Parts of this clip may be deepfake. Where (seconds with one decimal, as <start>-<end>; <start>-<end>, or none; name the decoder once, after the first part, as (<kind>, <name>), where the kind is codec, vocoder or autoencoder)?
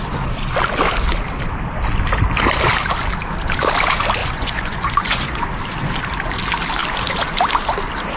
4.2-5.5 (vocoder, Vocos)